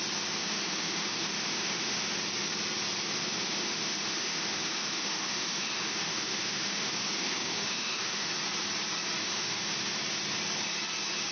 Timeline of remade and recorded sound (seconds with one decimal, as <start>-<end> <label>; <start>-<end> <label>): 0.0-0.4 recorded; 0.4-2.1 remade; 2.1-3.2 recorded; 3.2-8.3 remade; 8.3-9.2 recorded; 9.2-9.9 remade; 9.9-11.3 recorded